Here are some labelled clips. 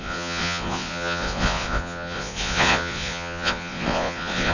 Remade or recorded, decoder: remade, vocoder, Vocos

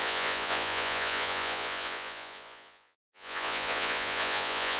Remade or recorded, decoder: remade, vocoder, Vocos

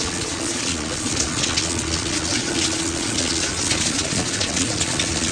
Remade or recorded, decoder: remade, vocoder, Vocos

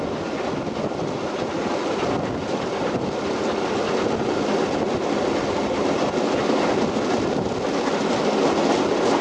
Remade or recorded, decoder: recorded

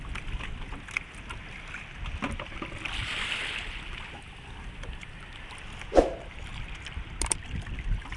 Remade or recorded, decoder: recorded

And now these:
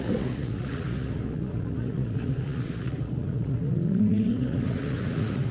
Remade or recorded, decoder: remade, vocoder, Vocos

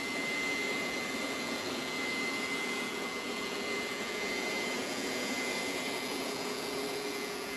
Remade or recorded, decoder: remade, vocoder, Vocos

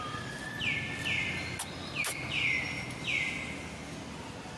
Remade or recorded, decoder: recorded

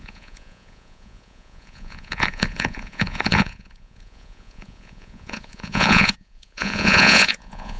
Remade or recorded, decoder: remade, vocoder, Vocos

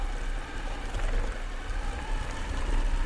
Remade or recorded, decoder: recorded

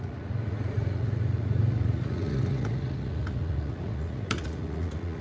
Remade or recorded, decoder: remade, vocoder, Vocos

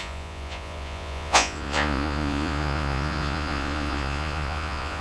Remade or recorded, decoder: remade, vocoder, Vocos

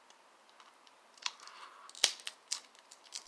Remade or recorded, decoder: recorded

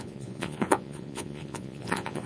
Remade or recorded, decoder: remade, vocoder, Vocos